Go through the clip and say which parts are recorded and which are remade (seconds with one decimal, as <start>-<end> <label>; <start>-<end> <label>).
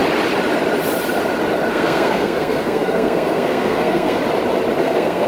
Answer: 0.0-1.7 recorded; 1.7-4.2 remade; 4.2-4.8 recorded; 4.8-5.3 remade